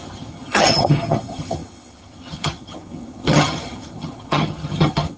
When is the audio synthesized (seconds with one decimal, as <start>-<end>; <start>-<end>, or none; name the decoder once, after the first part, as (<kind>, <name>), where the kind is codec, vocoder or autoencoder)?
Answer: 0.0-5.2 (vocoder, HiFi-GAN)